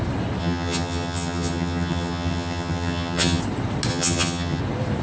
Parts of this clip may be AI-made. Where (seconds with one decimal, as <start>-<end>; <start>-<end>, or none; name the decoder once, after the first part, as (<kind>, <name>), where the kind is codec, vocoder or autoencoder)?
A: 0.4-3.4 (vocoder, HiFi-GAN); 3.9-4.6